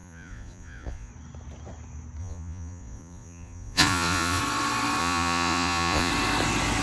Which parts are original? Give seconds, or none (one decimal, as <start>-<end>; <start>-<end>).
1.1-2.2; 4.4-5.0; 6.1-6.8